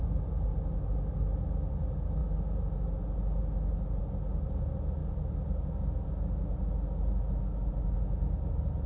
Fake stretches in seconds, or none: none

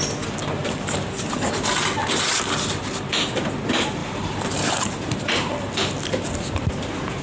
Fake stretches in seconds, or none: 0.6-1.2 (vocoder, BigVGAN v2); 2.0-2.7; 4.0-6.6

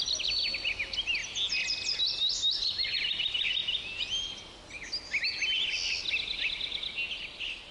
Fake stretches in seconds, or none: none

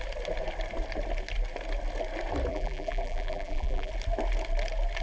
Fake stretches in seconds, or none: 2.5-3.9 (vocoder, BigVGAN v2)

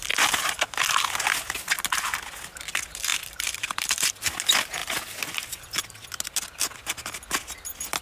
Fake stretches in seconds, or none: 3.1-4.1 (vocoder, BigVGAN v2); 4.8-6.2